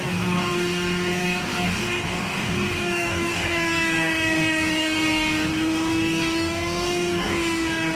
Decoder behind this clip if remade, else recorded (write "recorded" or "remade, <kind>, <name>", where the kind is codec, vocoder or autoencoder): remade, codec, DAC